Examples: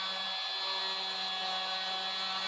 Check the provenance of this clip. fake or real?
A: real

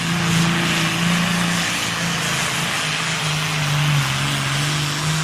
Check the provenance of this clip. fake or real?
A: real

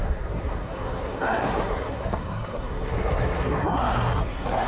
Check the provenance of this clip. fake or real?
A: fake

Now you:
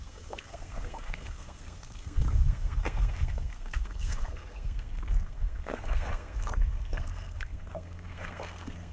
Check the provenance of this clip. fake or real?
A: fake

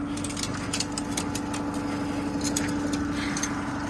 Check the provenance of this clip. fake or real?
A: real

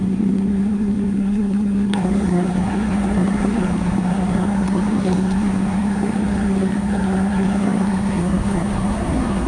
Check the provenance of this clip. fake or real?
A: fake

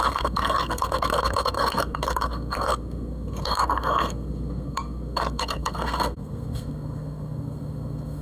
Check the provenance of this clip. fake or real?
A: fake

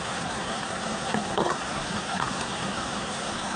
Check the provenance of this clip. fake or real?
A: fake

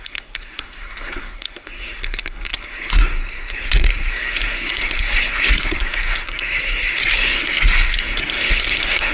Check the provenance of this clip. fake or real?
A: fake